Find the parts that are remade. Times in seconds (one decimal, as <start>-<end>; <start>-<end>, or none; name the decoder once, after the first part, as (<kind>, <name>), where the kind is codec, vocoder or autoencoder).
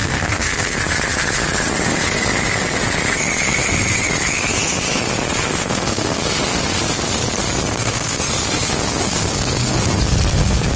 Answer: 0.0-0.8 (codec, SNAC); 5.5-6.2; 7.7-8.2